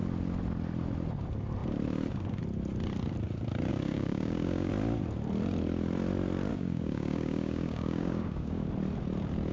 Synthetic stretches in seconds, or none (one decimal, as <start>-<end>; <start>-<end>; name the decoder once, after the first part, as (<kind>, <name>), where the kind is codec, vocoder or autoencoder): 3.7-4.7 (codec, DAC); 6.5-8.7